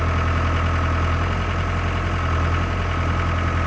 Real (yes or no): yes